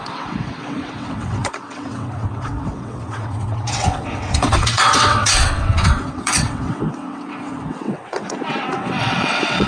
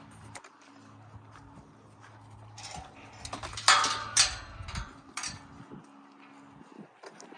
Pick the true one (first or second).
second